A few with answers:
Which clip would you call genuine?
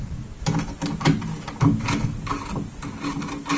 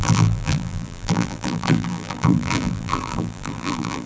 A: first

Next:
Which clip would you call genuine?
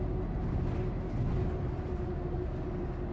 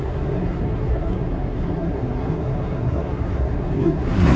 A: first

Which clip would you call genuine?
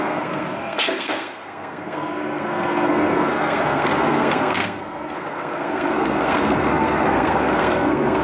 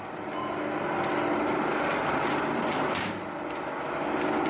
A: second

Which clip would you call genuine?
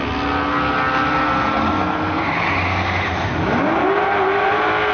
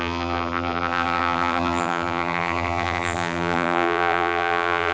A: first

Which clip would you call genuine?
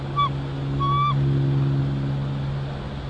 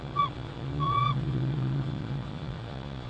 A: first